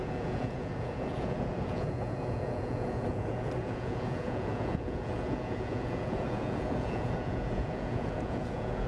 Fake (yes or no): yes